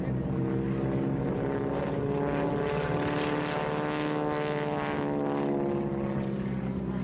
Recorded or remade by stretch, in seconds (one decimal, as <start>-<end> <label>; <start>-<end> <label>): 0.0-7.0 recorded